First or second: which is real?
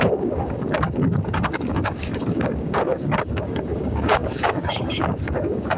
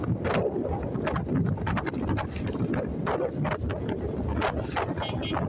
second